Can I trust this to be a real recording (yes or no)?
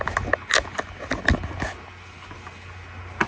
yes